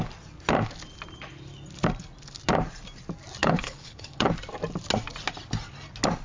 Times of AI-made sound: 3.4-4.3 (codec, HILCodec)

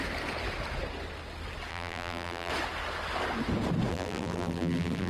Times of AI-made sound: 1.7-2.5 (vocoder, BigVGAN v2); 3.9-5.1

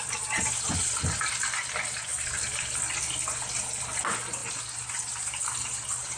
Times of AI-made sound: none

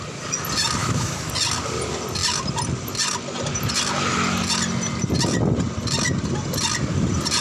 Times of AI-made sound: 0.8-1.3 (autoencoder, DAC-VAE)

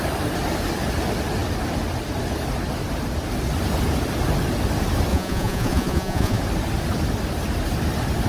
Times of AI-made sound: 5.1-6.4 (vocoder, Vocos)

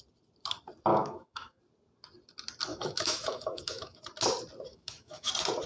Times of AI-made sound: 0.9-1.6 (autoencoder, DAC-VAE); 2.7-4.0; 4.7-5.3

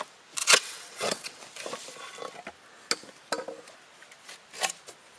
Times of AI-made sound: 0.4-1.4 (vocoder, WaveNeXt)